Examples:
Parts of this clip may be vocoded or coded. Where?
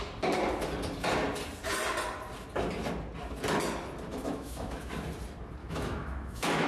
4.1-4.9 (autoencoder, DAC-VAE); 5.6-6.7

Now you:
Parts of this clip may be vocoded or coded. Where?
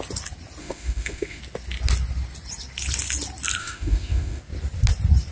0.6-1.4 (autoencoder, DAC-VAE); 3.6-4.4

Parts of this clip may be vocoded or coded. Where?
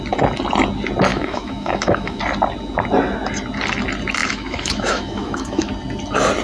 1.1-2.2 (autoencoder, DAC-VAE); 4.2-5.7